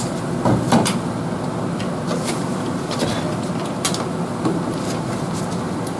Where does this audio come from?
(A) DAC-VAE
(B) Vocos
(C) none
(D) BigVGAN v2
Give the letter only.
C